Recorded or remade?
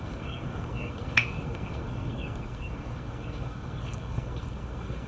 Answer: remade